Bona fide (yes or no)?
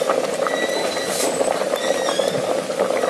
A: yes